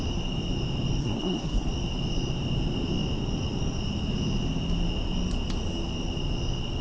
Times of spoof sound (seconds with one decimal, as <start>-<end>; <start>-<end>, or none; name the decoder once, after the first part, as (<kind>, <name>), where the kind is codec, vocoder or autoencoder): 1.0-1.7 (codec, SNAC)